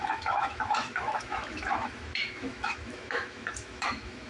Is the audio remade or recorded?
remade